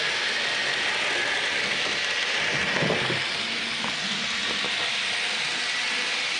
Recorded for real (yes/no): yes